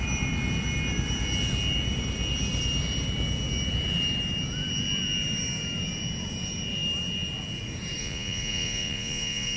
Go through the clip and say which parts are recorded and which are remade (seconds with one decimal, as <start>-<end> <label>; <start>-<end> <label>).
0.0-8.0 recorded; 8.0-9.6 remade